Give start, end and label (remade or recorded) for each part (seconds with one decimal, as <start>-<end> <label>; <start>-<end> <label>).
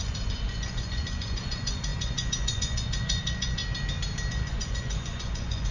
0.0-3.6 remade; 3.6-4.3 recorded; 4.3-5.7 remade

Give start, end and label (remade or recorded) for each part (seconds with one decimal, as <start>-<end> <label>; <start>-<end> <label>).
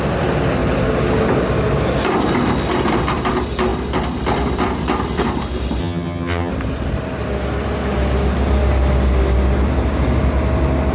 0.0-5.8 recorded; 5.8-6.5 remade; 6.5-10.9 recorded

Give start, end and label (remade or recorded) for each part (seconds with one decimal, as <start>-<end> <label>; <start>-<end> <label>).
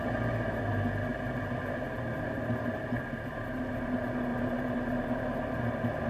0.0-4.3 recorded; 4.3-5.2 remade; 5.2-6.1 recorded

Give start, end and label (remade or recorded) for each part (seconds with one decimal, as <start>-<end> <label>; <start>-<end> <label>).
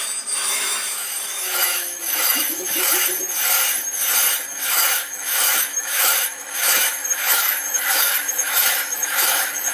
0.0-3.1 remade; 3.1-4.5 recorded; 4.5-9.7 remade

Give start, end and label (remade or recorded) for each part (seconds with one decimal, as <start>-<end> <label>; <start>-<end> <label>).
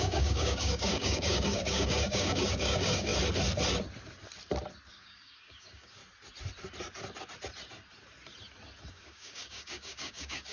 0.0-3.1 remade; 3.1-4.9 recorded; 4.9-6.0 remade; 6.0-8.9 recorded; 8.9-10.5 remade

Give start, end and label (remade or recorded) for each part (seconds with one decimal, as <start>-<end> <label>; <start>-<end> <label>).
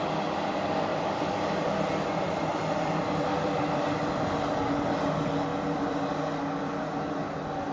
0.0-0.9 recorded; 0.9-4.5 remade; 4.5-5.5 recorded; 5.5-6.1 remade; 6.1-7.7 recorded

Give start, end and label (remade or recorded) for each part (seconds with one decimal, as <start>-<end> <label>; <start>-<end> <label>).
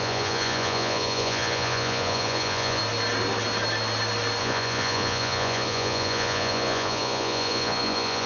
0.0-2.8 remade; 2.8-4.4 recorded; 4.4-8.3 remade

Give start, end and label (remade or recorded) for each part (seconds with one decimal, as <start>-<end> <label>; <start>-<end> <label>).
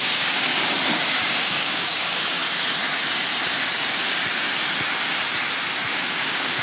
0.0-0.5 remade; 0.5-1.1 recorded; 1.1-2.4 remade; 2.4-5.9 recorded; 5.9-6.6 remade